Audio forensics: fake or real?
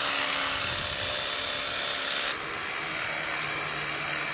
real